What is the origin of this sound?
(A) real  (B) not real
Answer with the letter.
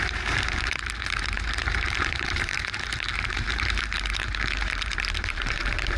B